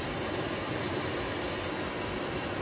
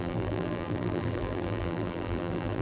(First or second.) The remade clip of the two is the second